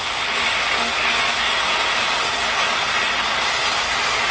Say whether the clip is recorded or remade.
recorded